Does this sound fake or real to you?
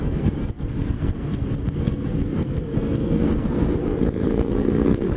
fake